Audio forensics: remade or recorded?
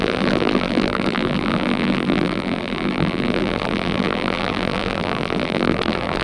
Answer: remade